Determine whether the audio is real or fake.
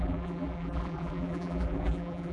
fake